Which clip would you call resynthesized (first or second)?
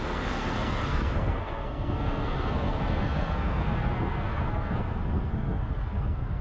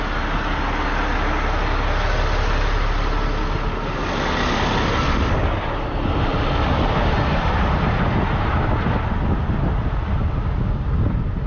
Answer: first